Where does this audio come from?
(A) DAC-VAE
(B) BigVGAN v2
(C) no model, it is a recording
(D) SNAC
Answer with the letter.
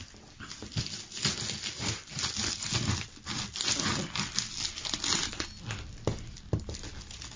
C